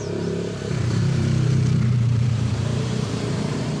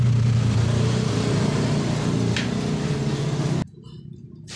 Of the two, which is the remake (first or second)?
first